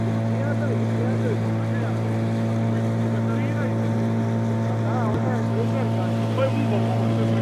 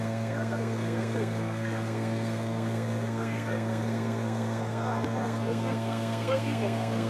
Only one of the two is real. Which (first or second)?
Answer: first